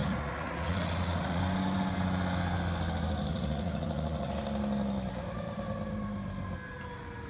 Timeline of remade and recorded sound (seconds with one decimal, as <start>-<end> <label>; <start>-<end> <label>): 0.0-1.4 remade; 1.4-3.3 recorded; 3.3-4.3 remade; 4.3-7.3 recorded